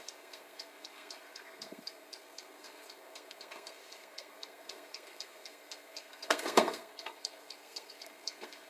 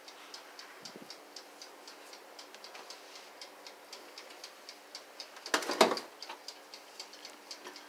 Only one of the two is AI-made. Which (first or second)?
first